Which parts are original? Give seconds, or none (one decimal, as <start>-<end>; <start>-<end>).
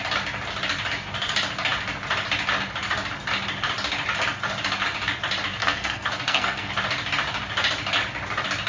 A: 0.0-5.6; 6.7-8.7